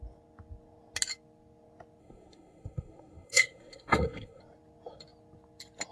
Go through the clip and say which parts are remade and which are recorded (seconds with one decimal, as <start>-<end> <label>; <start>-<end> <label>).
0.0-2.0 recorded; 2.0-4.4 remade; 4.4-5.9 recorded